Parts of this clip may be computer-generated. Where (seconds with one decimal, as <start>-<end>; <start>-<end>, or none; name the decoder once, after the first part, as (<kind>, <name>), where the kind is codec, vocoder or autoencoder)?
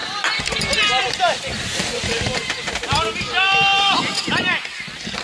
none